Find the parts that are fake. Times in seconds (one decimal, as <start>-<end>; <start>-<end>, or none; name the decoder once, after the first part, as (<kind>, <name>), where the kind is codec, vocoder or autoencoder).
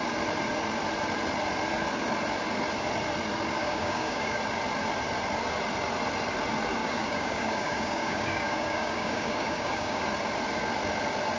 3.6-4.4 (codec, DAC); 6.8-10.0